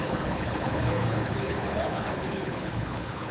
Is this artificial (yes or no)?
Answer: yes